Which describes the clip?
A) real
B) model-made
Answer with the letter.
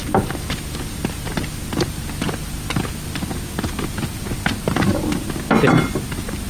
A